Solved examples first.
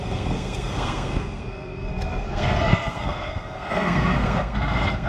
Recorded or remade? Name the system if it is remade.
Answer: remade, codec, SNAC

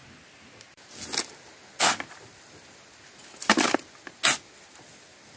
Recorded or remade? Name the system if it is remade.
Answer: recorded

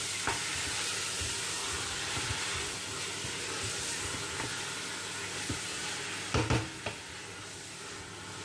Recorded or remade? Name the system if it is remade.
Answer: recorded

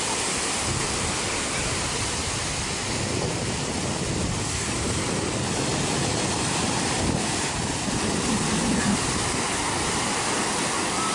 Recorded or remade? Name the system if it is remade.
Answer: recorded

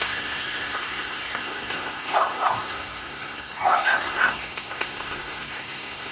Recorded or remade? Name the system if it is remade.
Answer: remade, codec, SNAC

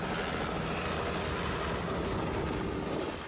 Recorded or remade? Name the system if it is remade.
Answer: recorded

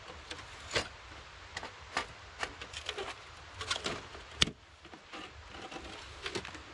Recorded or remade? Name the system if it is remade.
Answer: recorded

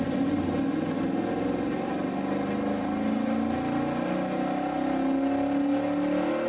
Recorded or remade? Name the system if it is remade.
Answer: recorded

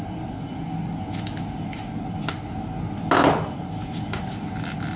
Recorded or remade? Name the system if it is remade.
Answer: recorded